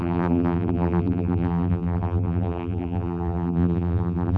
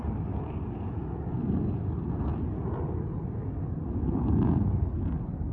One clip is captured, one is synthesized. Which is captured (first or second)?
second